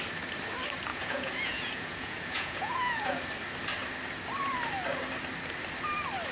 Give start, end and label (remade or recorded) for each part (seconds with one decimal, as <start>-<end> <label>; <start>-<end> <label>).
0.0-0.9 recorded; 0.9-3.2 remade; 3.2-6.3 recorded